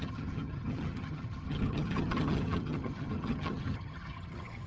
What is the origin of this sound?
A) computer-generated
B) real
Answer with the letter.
A